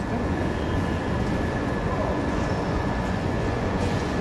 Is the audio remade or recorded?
remade